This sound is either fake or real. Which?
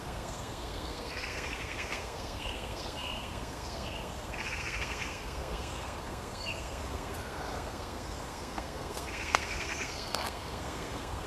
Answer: fake